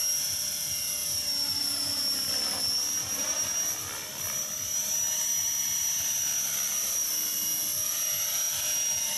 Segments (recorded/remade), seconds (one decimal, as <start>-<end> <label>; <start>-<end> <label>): 0.0-9.2 recorded

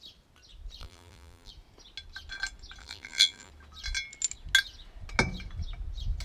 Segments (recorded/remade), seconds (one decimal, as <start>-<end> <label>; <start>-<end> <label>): 0.0-0.8 recorded; 0.8-1.5 remade; 1.5-2.8 recorded; 2.8-3.5 remade; 3.5-6.2 recorded

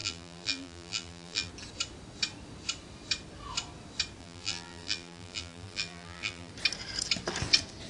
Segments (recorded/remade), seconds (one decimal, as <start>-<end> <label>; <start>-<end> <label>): 0.0-1.5 remade; 1.5-4.2 recorded; 4.2-6.5 remade; 6.5-7.9 recorded

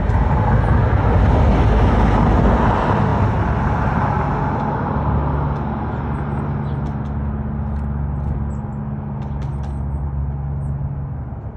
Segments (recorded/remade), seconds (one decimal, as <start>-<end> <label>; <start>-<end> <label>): 0.0-11.6 recorded